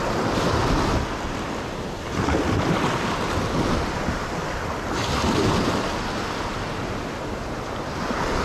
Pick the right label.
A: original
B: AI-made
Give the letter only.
A